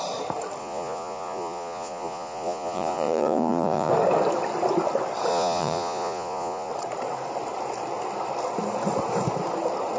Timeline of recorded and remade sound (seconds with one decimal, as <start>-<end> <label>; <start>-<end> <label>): 0.0-0.6 recorded; 0.6-3.9 remade; 3.9-5.3 recorded; 5.3-6.7 remade; 6.7-10.0 recorded